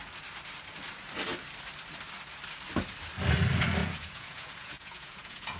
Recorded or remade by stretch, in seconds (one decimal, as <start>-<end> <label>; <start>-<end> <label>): 0.0-3.8 recorded; 3.8-5.6 remade